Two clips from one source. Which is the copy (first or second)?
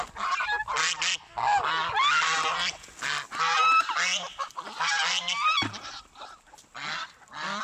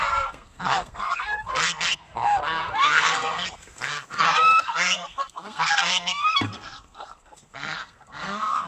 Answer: second